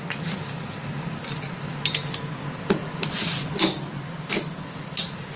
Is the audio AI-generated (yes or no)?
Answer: no